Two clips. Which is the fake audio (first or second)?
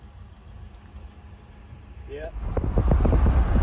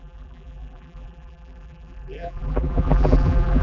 second